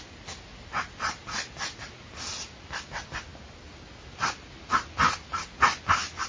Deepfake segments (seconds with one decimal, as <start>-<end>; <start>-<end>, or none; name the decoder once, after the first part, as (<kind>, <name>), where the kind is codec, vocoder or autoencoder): none